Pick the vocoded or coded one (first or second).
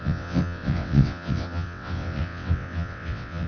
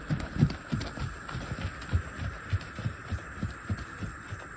first